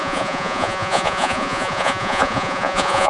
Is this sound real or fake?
fake